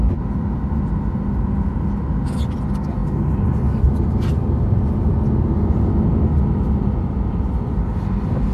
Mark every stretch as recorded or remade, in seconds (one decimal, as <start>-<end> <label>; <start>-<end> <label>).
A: 0.0-8.5 recorded